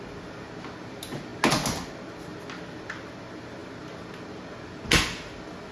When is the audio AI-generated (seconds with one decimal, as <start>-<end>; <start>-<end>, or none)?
none